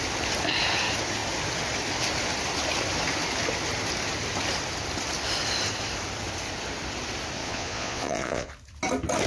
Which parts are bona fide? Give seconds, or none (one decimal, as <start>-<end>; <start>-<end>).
0.0-7.4; 8.5-9.3